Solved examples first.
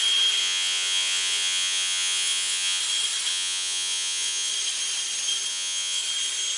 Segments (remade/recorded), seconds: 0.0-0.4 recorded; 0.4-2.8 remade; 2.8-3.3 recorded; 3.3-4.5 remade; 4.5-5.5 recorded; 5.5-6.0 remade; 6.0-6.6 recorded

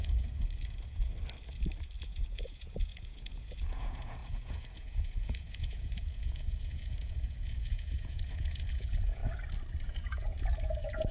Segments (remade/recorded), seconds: 0.0-1.1 remade; 1.1-2.0 recorded; 2.0-9.2 remade; 9.2-9.9 recorded; 9.9-11.1 remade